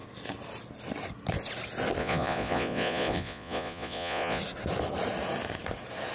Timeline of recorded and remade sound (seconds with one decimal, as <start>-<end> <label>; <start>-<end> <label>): 0.0-2.0 recorded; 2.0-4.4 remade; 4.4-6.1 recorded